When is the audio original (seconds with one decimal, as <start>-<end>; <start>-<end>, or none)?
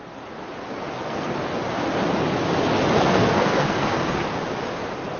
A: 0.0-0.9; 1.3-3.0; 4.2-5.2